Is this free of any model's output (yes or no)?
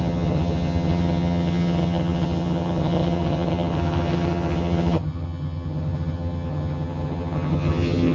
no